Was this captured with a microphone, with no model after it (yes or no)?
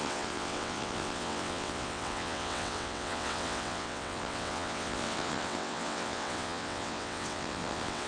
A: no